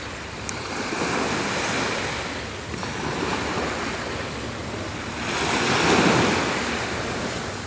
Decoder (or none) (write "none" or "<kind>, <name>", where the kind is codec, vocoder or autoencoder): none